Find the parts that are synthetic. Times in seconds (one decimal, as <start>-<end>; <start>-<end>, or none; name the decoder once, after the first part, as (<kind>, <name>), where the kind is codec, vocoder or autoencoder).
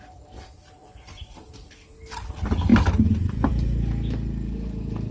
none